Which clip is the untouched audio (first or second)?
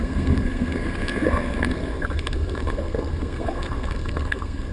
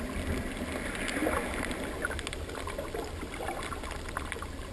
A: second